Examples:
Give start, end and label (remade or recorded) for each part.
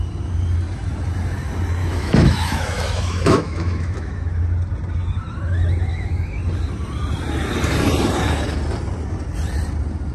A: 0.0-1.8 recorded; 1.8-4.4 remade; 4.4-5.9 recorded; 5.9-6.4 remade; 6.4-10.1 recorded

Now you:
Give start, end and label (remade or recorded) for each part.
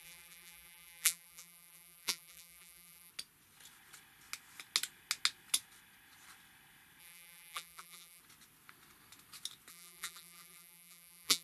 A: 0.0-3.1 remade; 3.1-7.0 recorded; 7.0-8.2 remade; 8.2-9.7 recorded; 9.7-11.4 remade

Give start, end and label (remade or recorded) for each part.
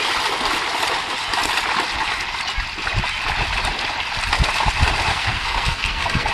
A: 0.0-5.1 recorded; 5.1-6.3 remade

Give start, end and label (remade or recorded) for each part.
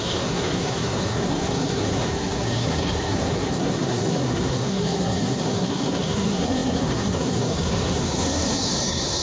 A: 0.0-9.2 remade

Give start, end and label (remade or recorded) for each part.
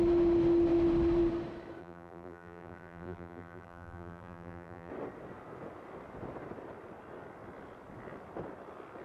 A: 0.0-1.8 recorded; 1.8-4.9 remade; 4.9-9.0 recorded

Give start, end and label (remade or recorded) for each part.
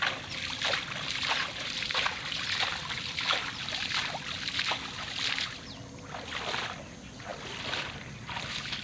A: 0.0-1.4 recorded; 1.4-2.0 remade; 2.0-8.8 recorded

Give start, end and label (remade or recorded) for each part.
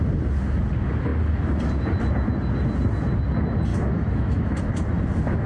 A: 0.0-3.7 recorded; 3.7-4.6 remade; 4.6-5.5 recorded